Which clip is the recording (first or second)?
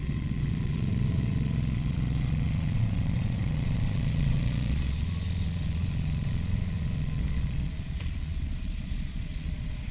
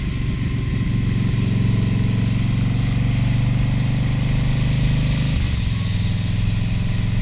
second